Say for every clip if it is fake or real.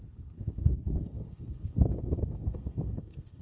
fake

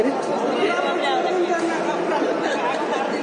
real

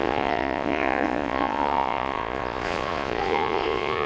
fake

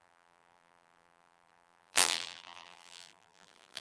fake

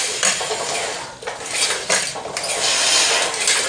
real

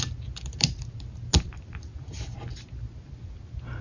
real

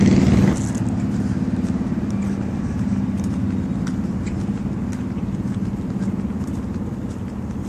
real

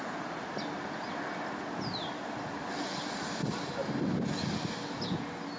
real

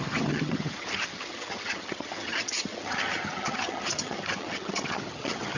fake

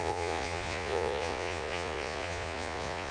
fake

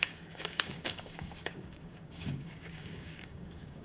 fake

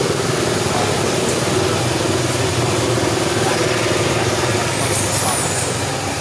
real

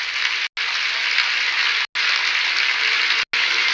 real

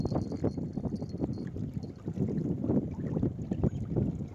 real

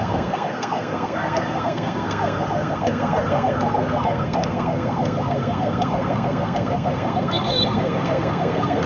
fake